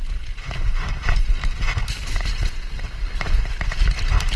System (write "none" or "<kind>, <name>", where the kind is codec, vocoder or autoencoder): none